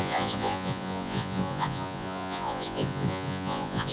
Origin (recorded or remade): remade